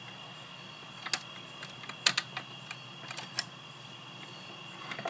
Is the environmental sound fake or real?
real